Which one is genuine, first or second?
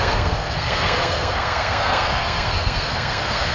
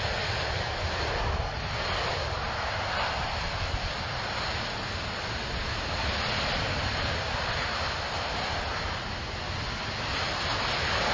second